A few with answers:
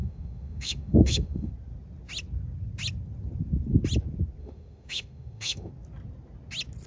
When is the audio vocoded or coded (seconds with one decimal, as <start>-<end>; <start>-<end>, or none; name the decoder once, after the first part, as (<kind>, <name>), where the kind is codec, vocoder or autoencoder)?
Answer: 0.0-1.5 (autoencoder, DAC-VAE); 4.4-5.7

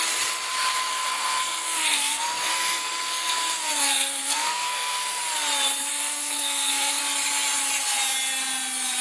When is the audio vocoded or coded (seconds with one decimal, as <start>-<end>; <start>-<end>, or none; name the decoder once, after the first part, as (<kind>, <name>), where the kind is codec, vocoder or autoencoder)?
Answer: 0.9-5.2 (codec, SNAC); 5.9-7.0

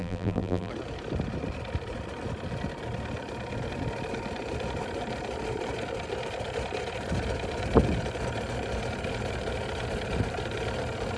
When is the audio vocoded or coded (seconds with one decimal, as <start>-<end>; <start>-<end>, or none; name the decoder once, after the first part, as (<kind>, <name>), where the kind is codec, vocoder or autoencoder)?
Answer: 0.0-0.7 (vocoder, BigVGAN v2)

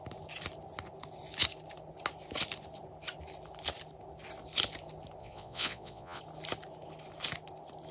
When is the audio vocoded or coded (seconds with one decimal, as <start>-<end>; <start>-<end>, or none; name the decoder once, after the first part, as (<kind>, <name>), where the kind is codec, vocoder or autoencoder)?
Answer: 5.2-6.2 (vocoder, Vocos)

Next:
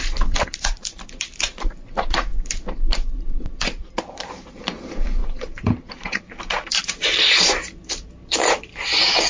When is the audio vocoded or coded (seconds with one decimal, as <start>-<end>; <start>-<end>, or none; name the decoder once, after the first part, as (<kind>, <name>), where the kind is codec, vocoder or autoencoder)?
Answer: 0.0-9.3 (vocoder, BigVGAN v2)

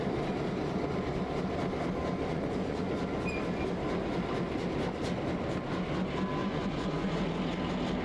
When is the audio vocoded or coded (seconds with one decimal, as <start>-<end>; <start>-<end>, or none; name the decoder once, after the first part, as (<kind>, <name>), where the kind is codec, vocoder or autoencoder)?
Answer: 2.3-2.9 (vocoder, Vocos); 6.4-7.2

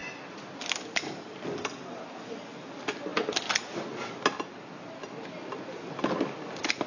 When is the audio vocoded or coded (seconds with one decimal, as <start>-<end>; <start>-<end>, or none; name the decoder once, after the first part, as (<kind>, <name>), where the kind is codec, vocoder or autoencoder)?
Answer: none